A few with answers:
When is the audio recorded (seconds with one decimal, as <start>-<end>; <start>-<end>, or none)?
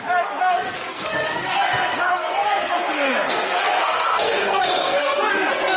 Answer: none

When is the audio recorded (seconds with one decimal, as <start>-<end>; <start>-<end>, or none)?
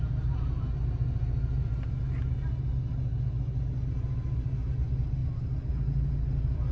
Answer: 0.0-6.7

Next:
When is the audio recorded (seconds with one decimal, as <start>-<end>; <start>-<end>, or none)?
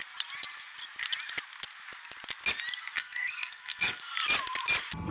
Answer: 0.0-3.0; 4.0-5.1